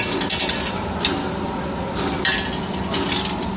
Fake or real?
real